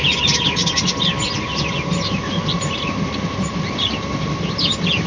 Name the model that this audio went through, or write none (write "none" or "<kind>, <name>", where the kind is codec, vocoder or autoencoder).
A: none